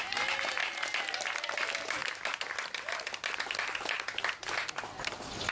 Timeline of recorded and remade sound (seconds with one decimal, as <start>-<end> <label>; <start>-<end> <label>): 0.0-5.5 recorded